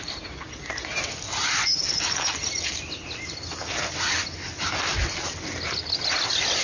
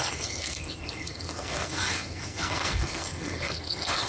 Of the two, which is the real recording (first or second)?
first